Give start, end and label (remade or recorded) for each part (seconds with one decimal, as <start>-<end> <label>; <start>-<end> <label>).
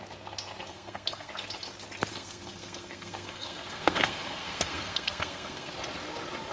0.0-0.7 recorded; 0.7-1.3 remade; 1.3-2.1 recorded; 2.1-5.7 remade; 5.7-6.5 recorded